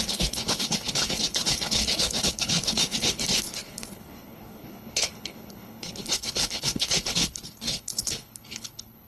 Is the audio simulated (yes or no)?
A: yes